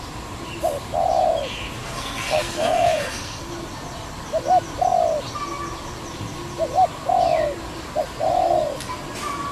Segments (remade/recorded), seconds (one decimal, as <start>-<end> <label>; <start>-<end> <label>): 0.0-1.8 recorded; 1.8-3.5 remade; 3.5-9.5 recorded